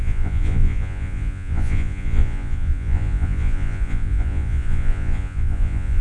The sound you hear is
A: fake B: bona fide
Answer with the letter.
A